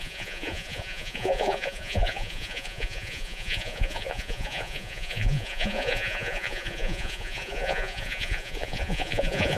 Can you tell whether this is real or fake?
fake